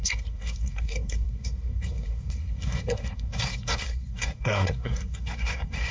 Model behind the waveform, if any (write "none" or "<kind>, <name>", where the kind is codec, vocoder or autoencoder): codec, SNAC